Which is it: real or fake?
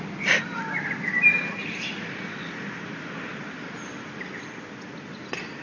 real